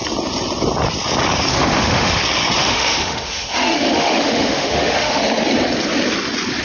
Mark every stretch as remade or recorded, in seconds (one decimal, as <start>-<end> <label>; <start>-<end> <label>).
0.0-1.5 recorded; 1.5-2.2 remade; 2.2-2.6 recorded; 2.6-5.2 remade; 5.2-6.6 recorded